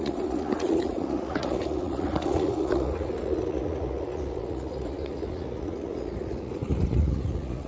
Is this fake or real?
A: fake